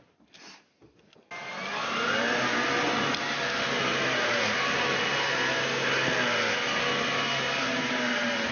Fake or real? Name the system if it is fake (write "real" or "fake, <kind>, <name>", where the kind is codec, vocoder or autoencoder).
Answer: real